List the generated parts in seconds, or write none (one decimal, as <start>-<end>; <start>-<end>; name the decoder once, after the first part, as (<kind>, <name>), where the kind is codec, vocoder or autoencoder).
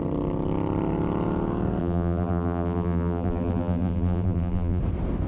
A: 1.8-4.8 (vocoder, BigVGAN v2)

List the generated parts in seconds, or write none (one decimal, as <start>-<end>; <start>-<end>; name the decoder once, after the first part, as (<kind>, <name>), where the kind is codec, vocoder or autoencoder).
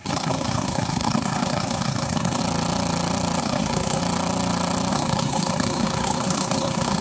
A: 0.0-2.4 (codec, SNAC); 3.4-4.0; 4.9-7.0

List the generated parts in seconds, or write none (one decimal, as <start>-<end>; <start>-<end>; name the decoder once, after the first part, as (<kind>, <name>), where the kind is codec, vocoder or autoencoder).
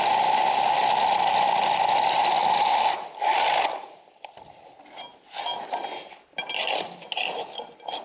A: none